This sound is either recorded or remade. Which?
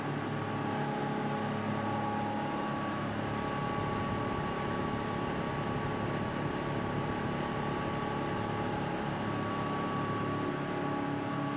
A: recorded